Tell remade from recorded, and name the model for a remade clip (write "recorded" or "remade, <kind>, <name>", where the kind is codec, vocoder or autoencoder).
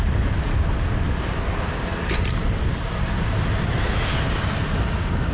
recorded